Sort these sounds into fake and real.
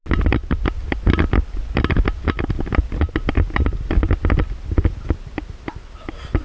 real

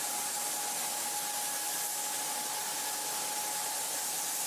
real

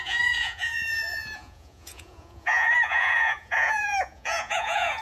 fake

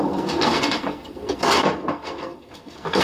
fake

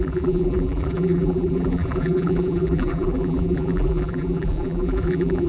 fake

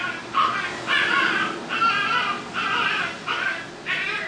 real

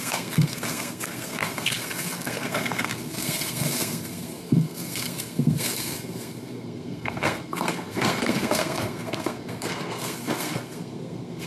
fake